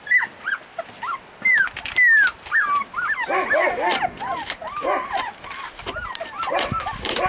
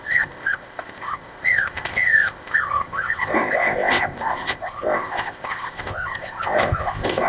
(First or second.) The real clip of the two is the first